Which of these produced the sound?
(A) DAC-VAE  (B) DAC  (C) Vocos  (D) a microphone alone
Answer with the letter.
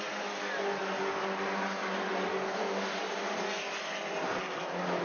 D